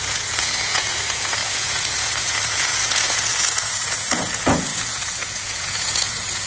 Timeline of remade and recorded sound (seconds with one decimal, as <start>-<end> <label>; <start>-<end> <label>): 0.0-6.5 remade